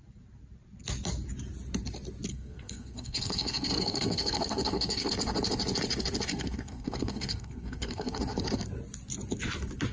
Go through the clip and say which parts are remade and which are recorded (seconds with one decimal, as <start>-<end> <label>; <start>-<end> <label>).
0.0-2.3 recorded; 2.3-5.1 remade; 5.1-6.3 recorded; 6.3-8.2 remade; 8.2-9.9 recorded